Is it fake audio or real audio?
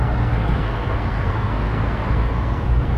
fake